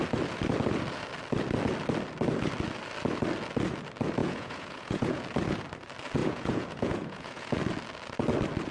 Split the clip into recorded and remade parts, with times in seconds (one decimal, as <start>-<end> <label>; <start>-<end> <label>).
0.0-4.2 recorded; 4.2-5.2 remade; 5.2-6.2 recorded; 6.2-7.5 remade; 7.5-8.7 recorded